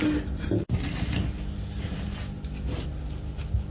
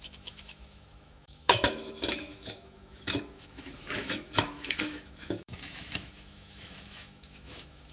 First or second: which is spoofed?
second